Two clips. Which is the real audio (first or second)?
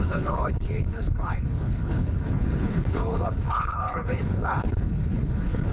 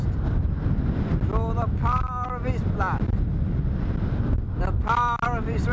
second